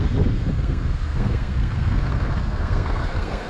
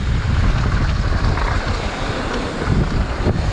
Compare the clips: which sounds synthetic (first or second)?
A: first